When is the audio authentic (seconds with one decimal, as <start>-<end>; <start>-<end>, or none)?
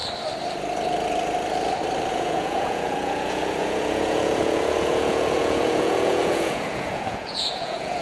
0.0-2.1